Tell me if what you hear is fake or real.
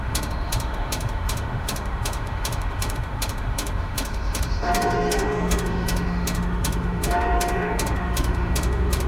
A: fake